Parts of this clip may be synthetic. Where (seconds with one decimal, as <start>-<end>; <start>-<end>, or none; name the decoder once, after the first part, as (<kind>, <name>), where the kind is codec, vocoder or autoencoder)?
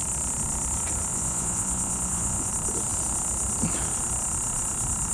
1.1-2.5 (vocoder, Vocos)